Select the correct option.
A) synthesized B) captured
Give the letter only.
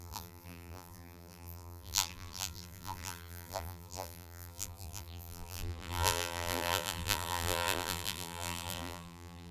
A